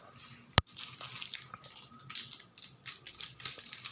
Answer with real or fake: real